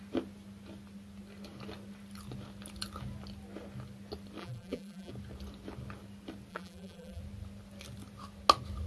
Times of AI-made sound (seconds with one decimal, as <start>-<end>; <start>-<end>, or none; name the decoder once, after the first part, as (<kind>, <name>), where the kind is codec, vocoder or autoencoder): 4.4-5.1 (vocoder, BigVGAN v2); 6.5-7.2